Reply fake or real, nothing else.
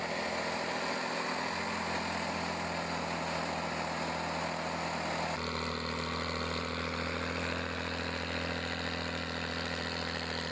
real